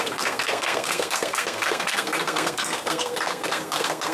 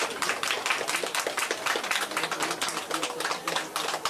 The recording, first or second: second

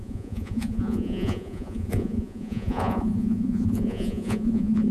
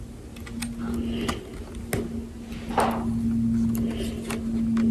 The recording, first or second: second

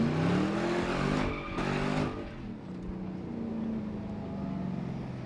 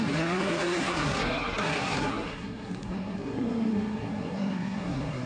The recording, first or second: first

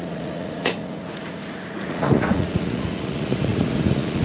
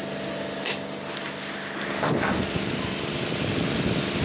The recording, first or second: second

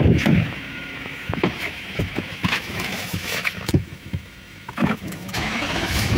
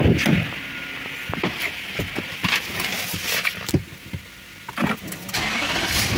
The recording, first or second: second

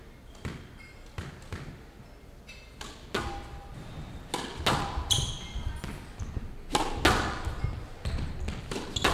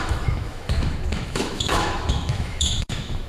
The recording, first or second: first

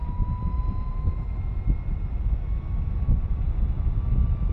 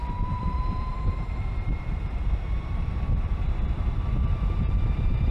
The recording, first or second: first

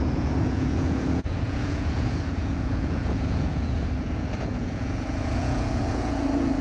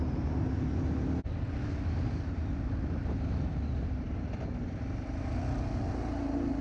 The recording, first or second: second